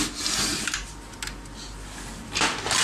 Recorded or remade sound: recorded